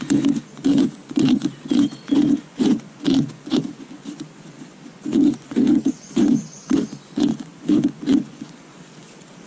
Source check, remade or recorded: remade